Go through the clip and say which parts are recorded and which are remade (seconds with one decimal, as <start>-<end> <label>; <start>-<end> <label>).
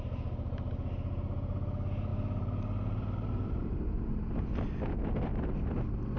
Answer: 0.0-2.1 recorded; 2.1-4.5 remade; 4.5-5.3 recorded; 5.3-5.8 remade; 5.8-6.2 recorded